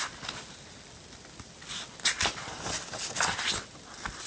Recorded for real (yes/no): yes